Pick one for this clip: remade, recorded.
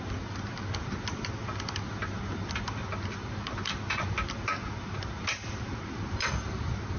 recorded